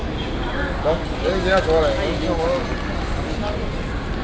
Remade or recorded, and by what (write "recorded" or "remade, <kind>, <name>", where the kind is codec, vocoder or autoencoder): recorded